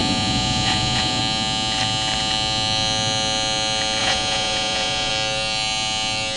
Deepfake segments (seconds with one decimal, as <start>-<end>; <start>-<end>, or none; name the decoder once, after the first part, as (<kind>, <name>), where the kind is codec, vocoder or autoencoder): 0.0-1.2 (vocoder, Vocos); 4.0-5.1